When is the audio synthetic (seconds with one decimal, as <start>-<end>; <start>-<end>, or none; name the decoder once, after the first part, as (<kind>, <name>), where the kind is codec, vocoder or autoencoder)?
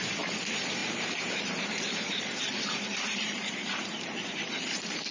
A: 0.0-5.1 (vocoder, BigVGAN v2)